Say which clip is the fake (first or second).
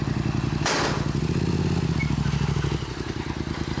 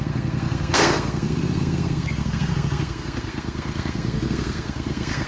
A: second